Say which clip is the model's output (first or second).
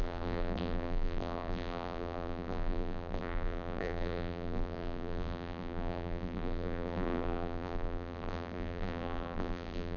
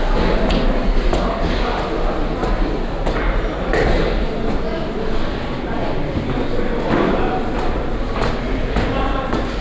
first